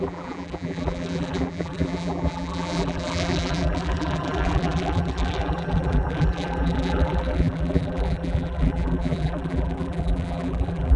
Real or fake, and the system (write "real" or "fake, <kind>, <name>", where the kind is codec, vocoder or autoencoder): fake, vocoder, BigVGAN v2